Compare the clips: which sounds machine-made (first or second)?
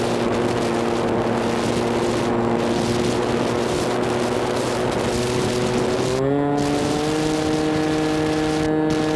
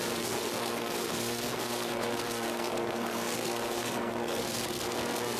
second